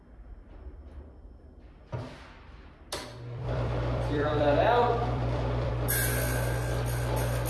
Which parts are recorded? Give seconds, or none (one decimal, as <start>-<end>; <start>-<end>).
0.0-3.1; 5.7-7.5